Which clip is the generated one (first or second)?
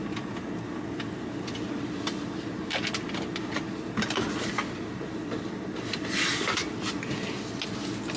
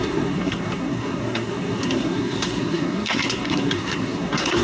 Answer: second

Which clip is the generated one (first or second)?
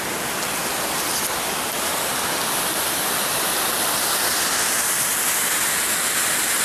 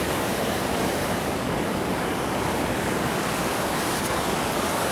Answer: second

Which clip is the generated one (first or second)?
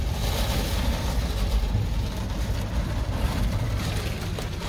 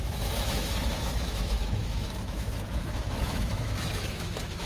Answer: second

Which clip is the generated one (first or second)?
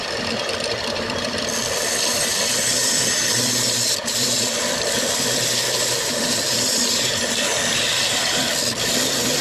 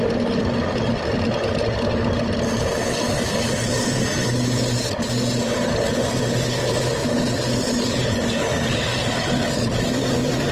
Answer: first